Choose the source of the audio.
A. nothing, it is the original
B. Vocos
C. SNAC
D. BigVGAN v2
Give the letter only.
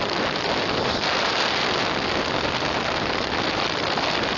A